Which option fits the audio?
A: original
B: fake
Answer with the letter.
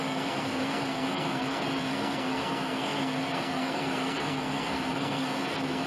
B